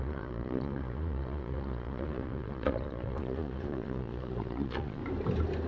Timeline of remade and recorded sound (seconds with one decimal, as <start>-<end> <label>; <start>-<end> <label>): 0.0-5.0 remade; 5.0-5.7 recorded